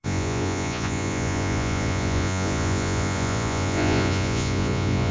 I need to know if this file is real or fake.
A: fake